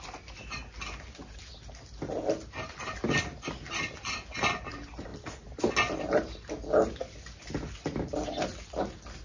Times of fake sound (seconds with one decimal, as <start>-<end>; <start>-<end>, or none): none